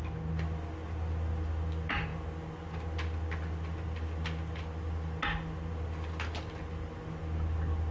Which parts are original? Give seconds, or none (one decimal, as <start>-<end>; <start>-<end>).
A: 0.0-7.9